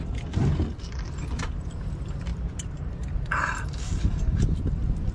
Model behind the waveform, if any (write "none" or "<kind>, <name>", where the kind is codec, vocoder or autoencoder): none